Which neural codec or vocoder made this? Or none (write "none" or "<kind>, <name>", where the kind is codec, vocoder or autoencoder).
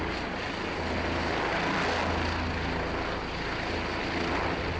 none